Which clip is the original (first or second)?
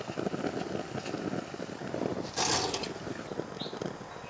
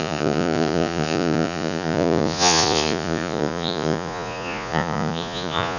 first